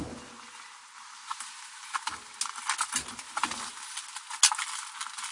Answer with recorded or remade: recorded